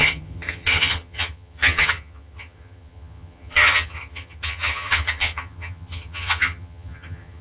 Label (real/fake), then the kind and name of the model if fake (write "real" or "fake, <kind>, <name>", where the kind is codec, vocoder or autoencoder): fake, vocoder, HiFi-GAN